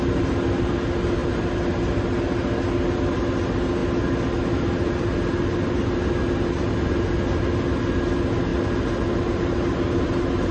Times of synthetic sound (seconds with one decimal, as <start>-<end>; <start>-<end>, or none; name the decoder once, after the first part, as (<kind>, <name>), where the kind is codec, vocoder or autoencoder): none